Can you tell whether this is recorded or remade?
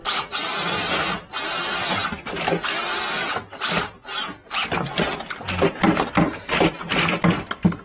recorded